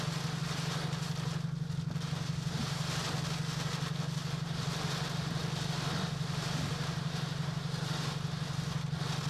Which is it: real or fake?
real